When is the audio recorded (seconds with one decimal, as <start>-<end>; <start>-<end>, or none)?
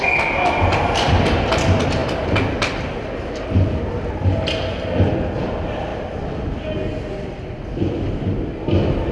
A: 0.0-9.1